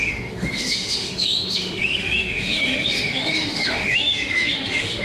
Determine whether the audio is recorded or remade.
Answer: remade